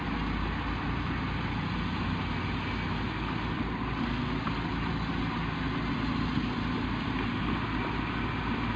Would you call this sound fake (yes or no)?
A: no